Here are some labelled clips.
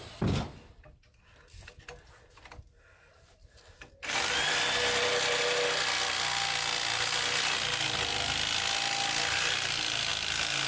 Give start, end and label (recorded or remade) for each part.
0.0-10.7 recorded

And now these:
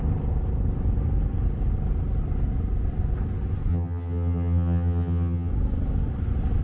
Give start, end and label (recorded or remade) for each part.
0.0-3.7 recorded; 3.7-5.5 remade; 5.5-6.6 recorded

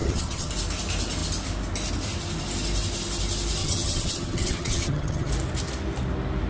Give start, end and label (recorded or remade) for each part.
0.0-0.5 remade; 0.5-3.6 recorded; 3.6-5.3 remade; 5.3-6.5 recorded

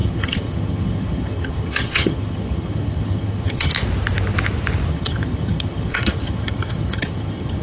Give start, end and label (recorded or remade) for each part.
0.0-3.7 remade; 3.7-4.9 recorded; 4.9-7.6 remade

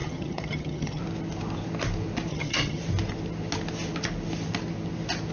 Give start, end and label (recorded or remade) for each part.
0.0-1.0 remade; 1.0-2.3 recorded; 2.3-2.8 remade; 2.8-5.3 recorded

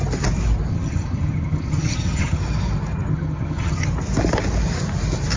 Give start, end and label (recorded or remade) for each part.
0.0-0.7 recorded; 0.7-2.4 remade; 2.4-3.1 recorded; 3.1-3.9 remade; 3.9-5.4 recorded

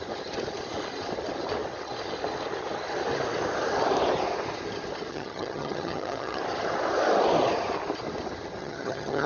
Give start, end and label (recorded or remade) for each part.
0.0-5.1 recorded; 5.1-6.4 remade; 6.4-8.6 recorded; 8.6-9.3 remade